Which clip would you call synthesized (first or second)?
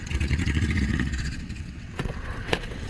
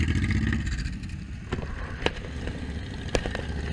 first